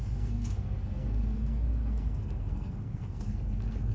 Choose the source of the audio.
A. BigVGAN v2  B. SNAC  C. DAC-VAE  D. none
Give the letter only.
B